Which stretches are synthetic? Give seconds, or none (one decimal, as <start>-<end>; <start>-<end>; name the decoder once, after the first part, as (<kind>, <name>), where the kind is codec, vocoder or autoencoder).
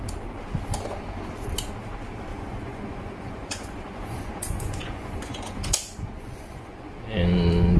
2.3-7.0 (vocoder, Vocos)